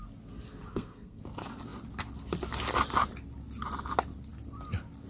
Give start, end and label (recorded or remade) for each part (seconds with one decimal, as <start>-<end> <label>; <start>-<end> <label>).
0.0-0.7 recorded; 0.7-1.2 remade; 1.2-5.1 recorded